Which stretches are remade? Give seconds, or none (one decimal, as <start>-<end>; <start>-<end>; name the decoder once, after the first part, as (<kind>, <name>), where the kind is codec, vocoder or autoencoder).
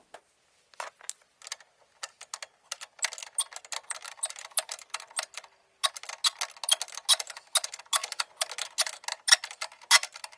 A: none